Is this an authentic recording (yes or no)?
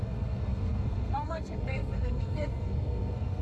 no